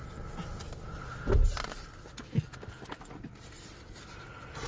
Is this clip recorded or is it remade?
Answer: recorded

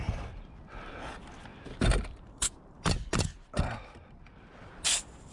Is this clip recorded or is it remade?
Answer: recorded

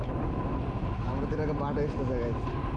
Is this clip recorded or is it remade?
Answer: recorded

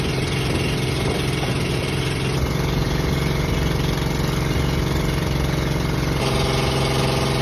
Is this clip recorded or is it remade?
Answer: recorded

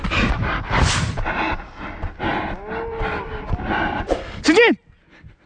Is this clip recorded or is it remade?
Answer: recorded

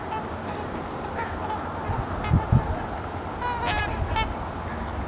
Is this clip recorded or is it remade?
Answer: recorded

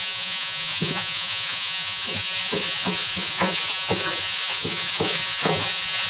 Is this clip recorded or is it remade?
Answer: remade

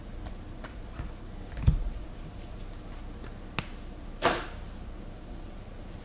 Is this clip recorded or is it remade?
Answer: recorded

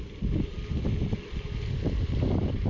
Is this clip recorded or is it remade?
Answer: recorded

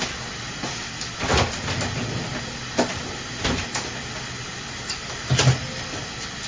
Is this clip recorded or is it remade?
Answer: recorded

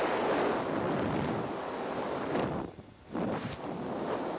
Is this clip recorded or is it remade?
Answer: recorded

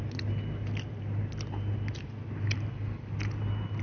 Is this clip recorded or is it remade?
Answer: recorded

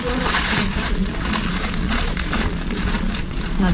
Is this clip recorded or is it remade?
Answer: remade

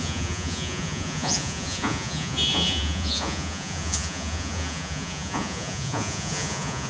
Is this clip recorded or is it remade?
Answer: remade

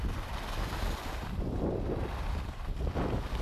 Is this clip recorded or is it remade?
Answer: recorded